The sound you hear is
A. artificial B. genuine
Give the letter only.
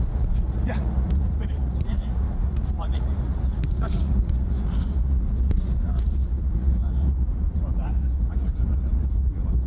A